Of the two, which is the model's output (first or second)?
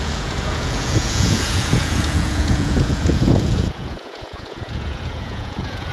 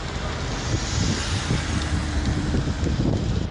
first